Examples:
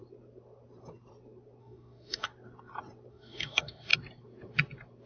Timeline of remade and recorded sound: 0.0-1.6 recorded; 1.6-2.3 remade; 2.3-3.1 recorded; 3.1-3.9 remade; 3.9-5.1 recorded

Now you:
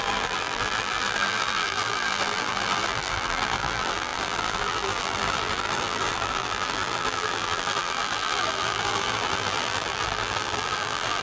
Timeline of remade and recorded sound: 0.0-11.2 remade

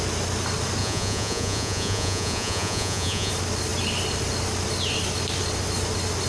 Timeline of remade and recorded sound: 0.0-0.8 recorded; 0.8-3.3 remade; 3.3-6.3 recorded

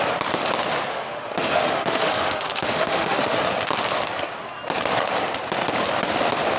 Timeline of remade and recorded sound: 0.0-0.9 recorded; 0.9-3.4 remade; 3.4-6.6 recorded

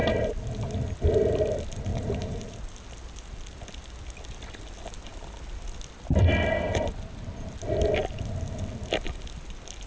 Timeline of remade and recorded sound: 0.0-0.5 remade; 0.5-1.9 recorded; 1.9-2.6 remade; 2.6-9.9 recorded

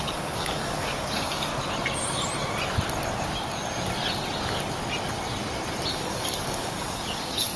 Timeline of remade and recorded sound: 0.0-1.5 remade; 1.5-5.9 recorded; 5.9-7.6 remade

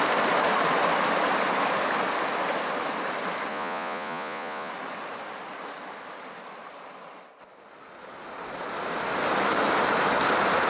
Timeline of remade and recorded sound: 0.0-3.5 recorded; 3.5-4.7 remade; 4.7-10.7 recorded

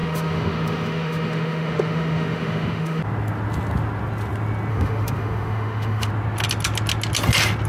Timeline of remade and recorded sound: 0.0-3.0 remade; 3.0-4.7 recorded; 4.7-6.1 remade; 6.1-7.7 recorded